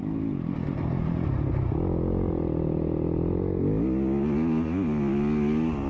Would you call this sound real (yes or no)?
yes